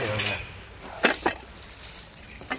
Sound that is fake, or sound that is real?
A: real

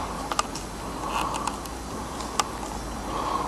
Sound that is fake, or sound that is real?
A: real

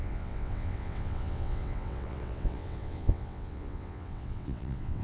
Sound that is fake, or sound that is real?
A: fake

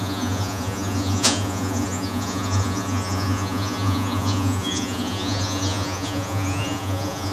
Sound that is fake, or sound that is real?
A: fake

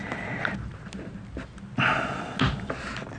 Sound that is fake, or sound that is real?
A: real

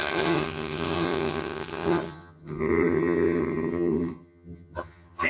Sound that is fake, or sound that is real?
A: fake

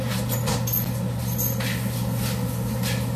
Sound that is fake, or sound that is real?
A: real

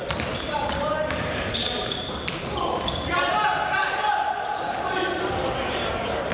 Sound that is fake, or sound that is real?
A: fake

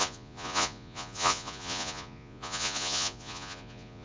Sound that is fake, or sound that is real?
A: fake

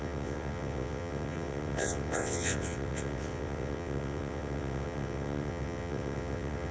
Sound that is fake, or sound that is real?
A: fake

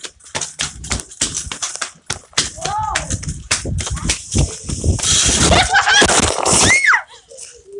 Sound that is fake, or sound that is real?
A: real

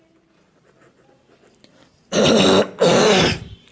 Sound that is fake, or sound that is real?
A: real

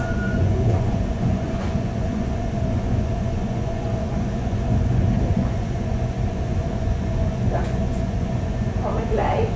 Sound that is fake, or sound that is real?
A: fake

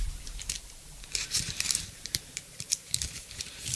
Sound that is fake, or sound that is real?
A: fake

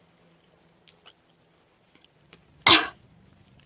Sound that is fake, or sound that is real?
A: real